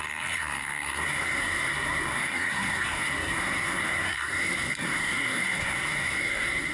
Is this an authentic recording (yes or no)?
no